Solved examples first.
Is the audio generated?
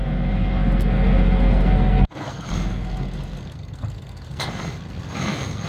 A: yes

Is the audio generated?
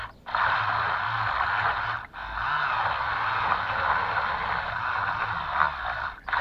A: no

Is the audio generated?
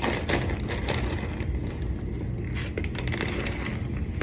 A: no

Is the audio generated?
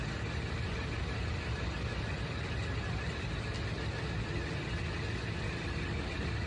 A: no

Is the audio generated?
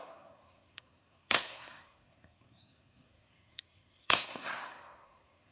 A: yes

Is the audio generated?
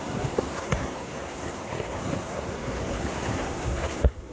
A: yes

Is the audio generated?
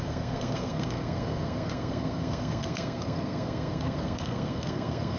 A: yes